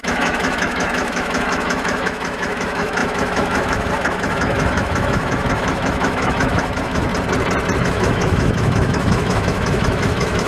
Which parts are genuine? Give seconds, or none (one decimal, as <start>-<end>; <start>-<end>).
7.1-7.8